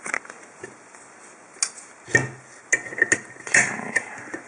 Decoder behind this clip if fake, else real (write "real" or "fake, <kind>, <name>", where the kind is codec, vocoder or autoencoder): real